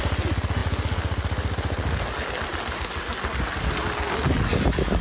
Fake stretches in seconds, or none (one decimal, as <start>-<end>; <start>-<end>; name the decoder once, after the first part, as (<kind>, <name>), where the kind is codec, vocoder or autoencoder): none